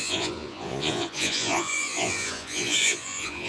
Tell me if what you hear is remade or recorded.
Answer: remade